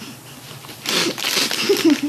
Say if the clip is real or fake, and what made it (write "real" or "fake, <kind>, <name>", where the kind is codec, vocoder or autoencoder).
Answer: real